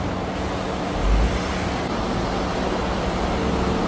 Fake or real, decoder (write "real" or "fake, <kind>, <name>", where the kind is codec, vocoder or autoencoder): real